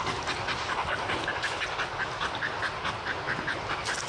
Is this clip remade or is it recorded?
recorded